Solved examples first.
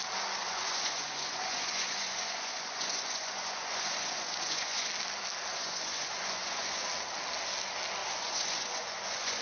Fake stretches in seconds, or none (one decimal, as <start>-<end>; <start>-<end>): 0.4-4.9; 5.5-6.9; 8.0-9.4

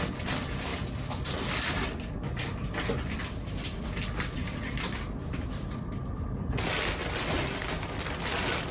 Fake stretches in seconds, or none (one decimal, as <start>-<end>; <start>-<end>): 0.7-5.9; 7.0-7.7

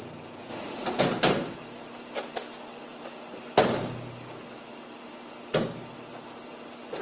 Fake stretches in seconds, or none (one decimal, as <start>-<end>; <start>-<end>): 0.5-1.0

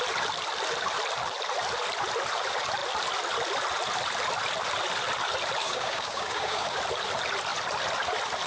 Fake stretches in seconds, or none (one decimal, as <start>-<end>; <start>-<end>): 5.6-6.8

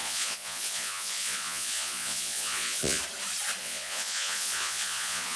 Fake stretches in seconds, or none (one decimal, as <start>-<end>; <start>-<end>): 0.0-3.0; 3.6-5.4